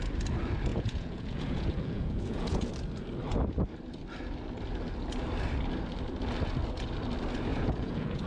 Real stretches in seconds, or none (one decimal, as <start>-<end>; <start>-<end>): 0.0-0.7; 2.7-7.5